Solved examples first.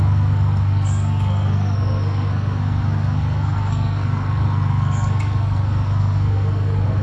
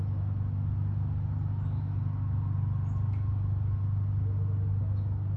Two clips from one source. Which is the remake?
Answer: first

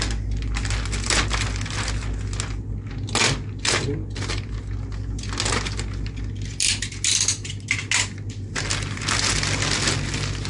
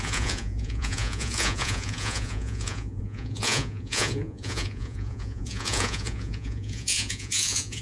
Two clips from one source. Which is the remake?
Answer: second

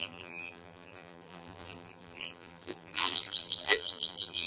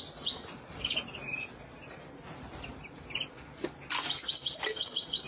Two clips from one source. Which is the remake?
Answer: first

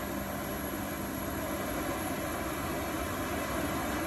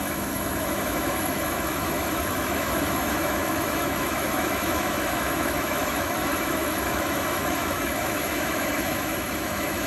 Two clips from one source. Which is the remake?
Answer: second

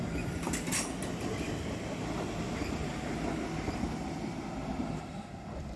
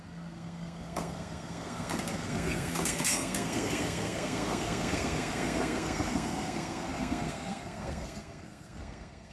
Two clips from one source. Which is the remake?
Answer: second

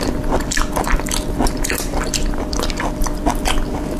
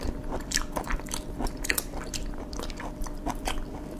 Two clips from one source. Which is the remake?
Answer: second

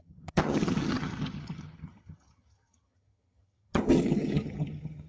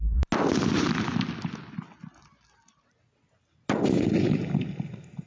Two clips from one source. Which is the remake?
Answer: first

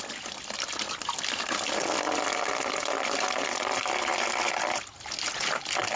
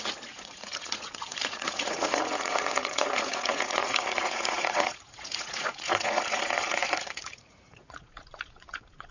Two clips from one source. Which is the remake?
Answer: second